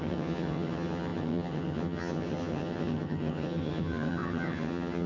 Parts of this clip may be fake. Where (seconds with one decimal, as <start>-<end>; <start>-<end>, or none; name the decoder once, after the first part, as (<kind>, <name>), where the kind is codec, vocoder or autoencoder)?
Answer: 0.0-5.1 (vocoder, HiFi-GAN)